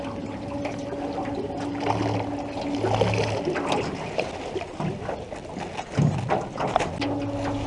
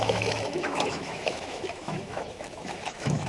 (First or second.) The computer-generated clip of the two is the second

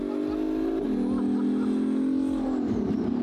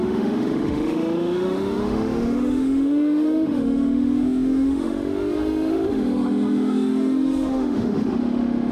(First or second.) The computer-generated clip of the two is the second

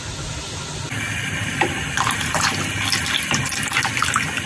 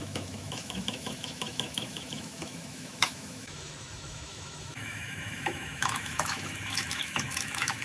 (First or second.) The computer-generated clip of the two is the second